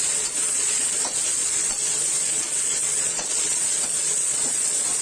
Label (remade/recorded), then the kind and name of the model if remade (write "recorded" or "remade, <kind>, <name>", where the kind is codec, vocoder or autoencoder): remade, vocoder, Vocos